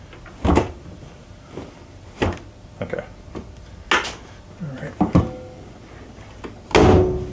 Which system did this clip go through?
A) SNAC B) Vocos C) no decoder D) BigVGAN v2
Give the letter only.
C